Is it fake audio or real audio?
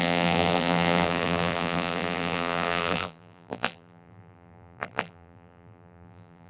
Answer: fake